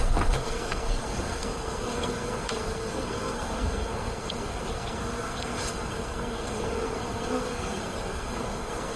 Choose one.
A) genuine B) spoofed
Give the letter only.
B